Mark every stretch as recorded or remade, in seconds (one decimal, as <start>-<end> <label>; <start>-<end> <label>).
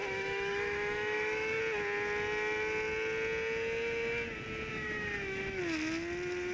0.0-1.6 remade; 1.6-4.7 recorded; 4.7-5.6 remade; 5.6-6.5 recorded